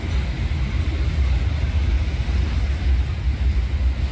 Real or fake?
real